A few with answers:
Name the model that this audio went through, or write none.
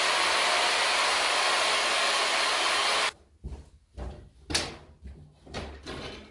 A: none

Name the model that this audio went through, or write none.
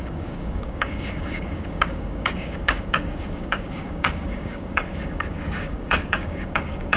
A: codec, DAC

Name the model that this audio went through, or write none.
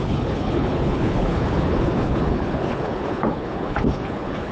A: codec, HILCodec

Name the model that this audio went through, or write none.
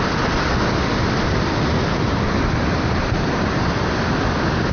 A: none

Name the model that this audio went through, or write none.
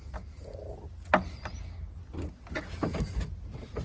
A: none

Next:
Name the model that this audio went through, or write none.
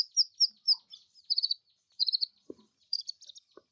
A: none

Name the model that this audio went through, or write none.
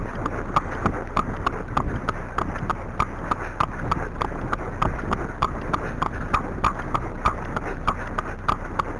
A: none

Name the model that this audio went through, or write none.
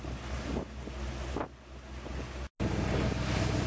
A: none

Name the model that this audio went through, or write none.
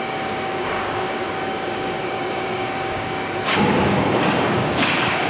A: codec, DAC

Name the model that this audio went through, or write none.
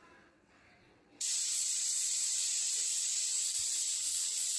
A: vocoder, WaveNeXt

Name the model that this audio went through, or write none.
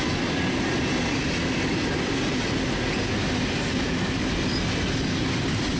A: none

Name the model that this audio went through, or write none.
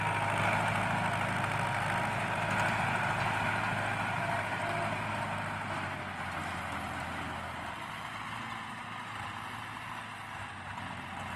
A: none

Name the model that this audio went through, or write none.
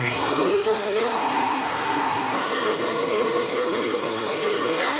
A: codec, SNAC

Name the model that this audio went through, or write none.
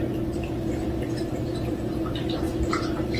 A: none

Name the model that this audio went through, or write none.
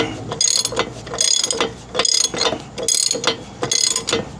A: none